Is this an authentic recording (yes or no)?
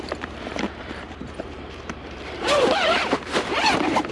no